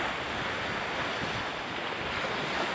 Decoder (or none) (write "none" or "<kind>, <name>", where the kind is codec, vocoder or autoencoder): none